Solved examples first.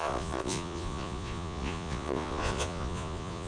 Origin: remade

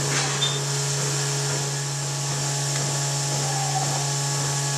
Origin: recorded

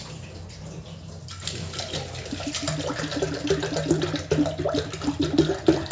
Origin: recorded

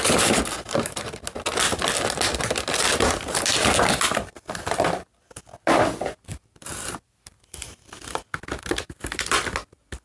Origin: recorded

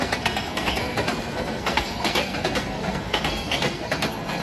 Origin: remade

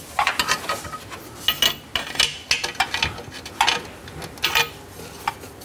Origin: recorded